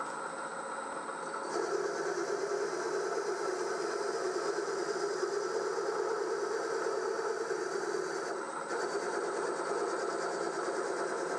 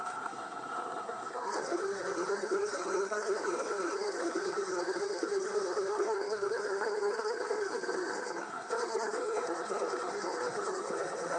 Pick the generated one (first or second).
second